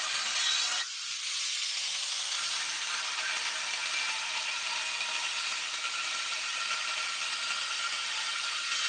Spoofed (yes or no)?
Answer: no